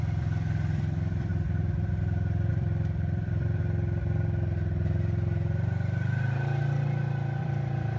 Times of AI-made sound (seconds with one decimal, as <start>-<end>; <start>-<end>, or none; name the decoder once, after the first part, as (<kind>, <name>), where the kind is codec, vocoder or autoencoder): 0.0-1.3 (vocoder, BigVGAN v2); 2.5-3.6; 7.4-8.0